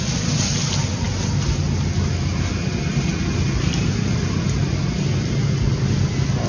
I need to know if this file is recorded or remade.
recorded